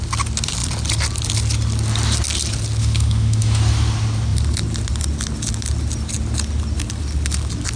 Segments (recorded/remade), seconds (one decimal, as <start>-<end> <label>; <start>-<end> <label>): 0.0-2.8 recorded; 2.8-3.6 remade; 3.6-7.8 recorded

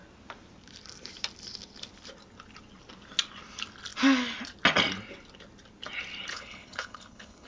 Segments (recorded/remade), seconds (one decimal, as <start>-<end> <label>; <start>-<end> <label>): 0.0-6.3 recorded; 6.3-7.5 remade

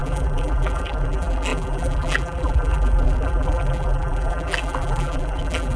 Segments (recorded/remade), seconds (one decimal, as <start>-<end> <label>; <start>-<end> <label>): 0.0-5.8 remade

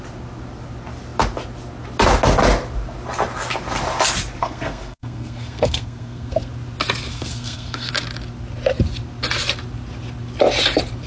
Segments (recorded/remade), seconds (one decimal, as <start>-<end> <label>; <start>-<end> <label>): 0.0-4.4 recorded; 4.4-6.5 remade; 6.5-7.1 recorded; 7.1-7.9 remade; 7.9-11.1 recorded

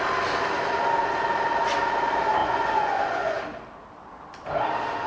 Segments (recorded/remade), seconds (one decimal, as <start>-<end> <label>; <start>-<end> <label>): 0.0-2.4 recorded; 2.4-3.4 remade; 3.4-5.1 recorded

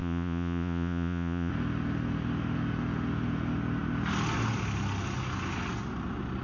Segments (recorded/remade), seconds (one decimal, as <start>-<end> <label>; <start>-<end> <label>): 0.0-1.5 remade; 1.5-6.4 recorded